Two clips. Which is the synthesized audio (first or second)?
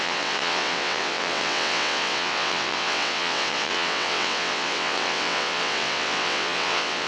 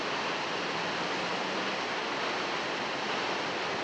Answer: first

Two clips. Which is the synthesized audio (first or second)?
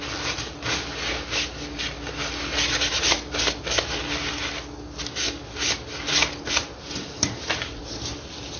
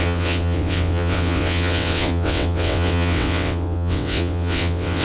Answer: second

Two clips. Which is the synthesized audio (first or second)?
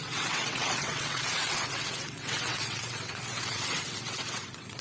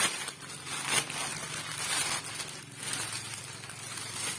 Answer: first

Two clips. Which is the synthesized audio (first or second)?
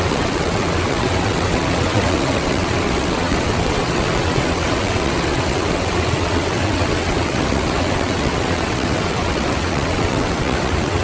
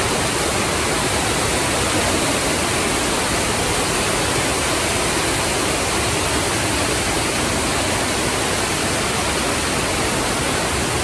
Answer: first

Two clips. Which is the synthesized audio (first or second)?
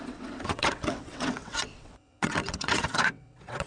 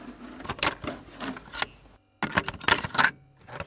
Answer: first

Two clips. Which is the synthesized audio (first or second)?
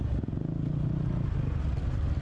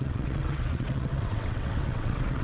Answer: second